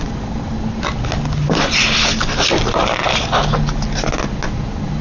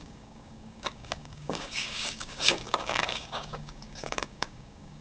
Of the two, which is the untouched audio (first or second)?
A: first